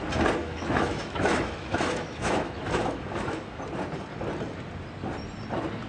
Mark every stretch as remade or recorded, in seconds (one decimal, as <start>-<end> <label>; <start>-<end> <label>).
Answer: 0.0-0.4 recorded; 0.4-3.6 remade; 3.6-5.9 recorded